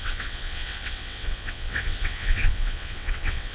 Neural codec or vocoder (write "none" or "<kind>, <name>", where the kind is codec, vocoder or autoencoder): vocoder, WaveNeXt